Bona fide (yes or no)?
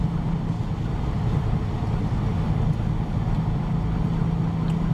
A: yes